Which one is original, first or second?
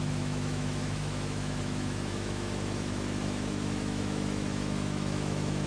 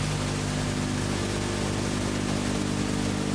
second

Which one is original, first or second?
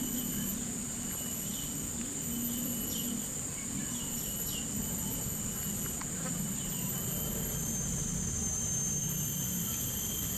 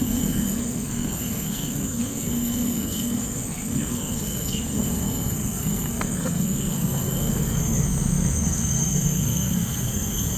first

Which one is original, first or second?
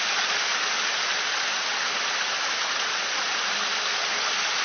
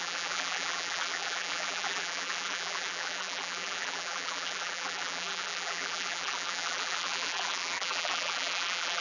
first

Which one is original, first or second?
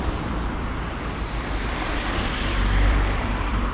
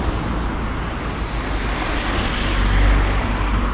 second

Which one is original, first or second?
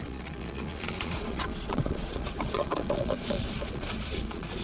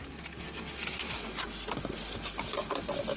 second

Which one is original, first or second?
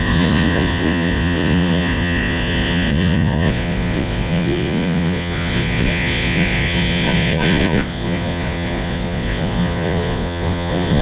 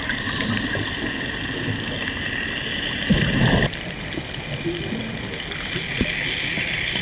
second